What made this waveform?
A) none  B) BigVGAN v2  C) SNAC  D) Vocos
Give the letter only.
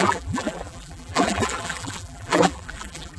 B